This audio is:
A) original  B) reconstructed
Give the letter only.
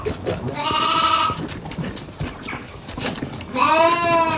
A